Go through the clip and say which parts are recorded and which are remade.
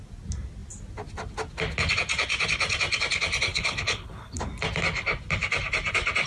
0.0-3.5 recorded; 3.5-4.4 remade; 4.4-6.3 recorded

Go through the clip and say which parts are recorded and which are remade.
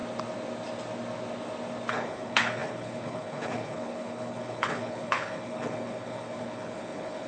0.0-1.9 recorded; 1.9-7.3 remade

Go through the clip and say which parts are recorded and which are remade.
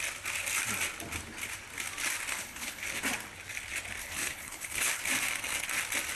0.0-2.3 recorded; 2.3-2.9 remade; 2.9-4.0 recorded; 4.0-5.0 remade; 5.0-6.2 recorded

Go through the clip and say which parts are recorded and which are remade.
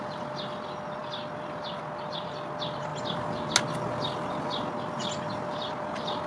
0.0-6.3 recorded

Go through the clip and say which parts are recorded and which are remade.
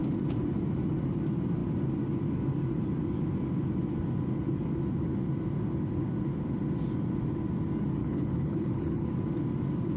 0.0-8.0 recorded; 8.0-9.1 remade; 9.1-10.0 recorded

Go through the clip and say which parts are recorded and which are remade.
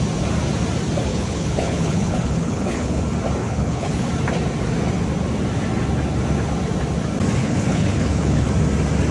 0.0-1.1 recorded; 1.1-3.0 remade; 3.0-3.4 recorded; 3.4-4.1 remade; 4.1-7.4 recorded; 7.4-8.5 remade; 8.5-9.1 recorded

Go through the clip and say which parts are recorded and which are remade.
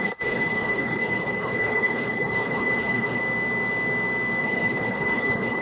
0.0-3.2 remade; 3.2-4.4 recorded; 4.4-5.6 remade